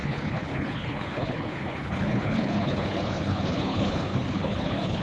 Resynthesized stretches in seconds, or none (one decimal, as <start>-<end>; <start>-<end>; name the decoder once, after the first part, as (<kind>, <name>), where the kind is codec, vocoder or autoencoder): 0.0-5.0 (codec, HILCodec)